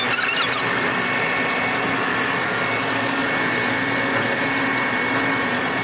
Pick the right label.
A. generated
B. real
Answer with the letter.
B